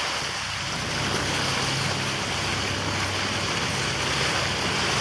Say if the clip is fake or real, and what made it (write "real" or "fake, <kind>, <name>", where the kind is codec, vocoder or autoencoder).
real